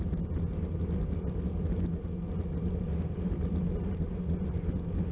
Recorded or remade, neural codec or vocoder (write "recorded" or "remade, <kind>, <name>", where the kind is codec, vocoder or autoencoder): recorded